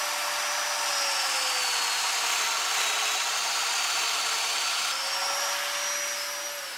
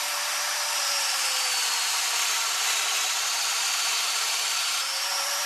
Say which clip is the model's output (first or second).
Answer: second